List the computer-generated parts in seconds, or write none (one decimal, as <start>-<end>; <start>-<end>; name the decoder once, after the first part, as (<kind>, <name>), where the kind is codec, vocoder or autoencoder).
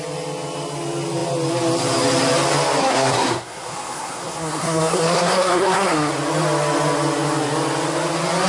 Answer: 2.8-6.1 (codec, SNAC)